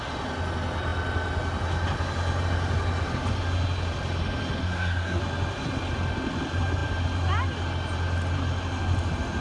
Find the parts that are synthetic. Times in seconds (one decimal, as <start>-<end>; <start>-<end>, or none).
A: 4.6-5.2